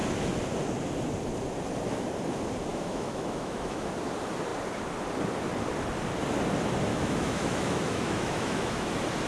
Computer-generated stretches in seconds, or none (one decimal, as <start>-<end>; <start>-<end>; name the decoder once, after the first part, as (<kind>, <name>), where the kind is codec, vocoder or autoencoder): 2.7-3.9 (autoencoder, DAC-VAE); 6.9-8.9